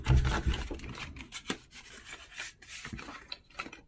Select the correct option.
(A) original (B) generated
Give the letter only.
A